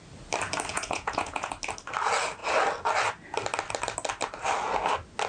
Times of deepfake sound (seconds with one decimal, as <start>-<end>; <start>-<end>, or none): 0.7-1.5

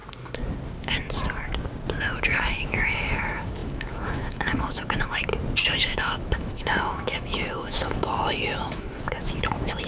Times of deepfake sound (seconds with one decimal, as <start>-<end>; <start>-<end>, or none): 2.0-5.3; 5.8-9.9

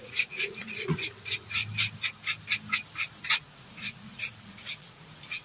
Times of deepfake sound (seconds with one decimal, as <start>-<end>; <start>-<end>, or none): 0.0-1.6; 3.3-5.4

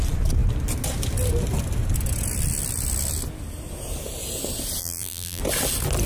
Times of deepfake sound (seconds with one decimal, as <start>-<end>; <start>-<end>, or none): 4.8-5.4

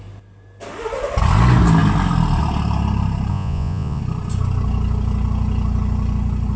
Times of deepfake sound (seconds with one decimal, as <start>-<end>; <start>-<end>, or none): 3.3-4.0

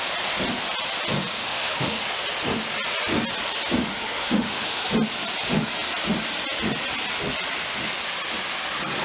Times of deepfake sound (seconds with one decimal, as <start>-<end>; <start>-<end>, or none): 1.4-2.0; 3.9-4.9

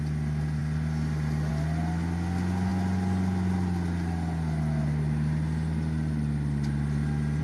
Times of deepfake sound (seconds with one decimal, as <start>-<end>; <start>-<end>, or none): none